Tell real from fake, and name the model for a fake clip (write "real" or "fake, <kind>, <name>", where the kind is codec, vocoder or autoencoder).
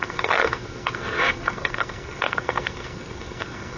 fake, codec, SNAC